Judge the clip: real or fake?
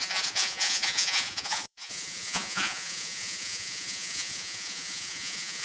fake